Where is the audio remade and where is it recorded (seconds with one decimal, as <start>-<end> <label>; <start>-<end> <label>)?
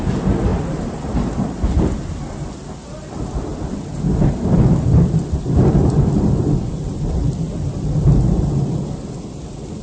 0.0-0.5 recorded; 0.5-1.8 remade; 1.8-3.5 recorded; 3.5-8.1 remade; 8.1-9.8 recorded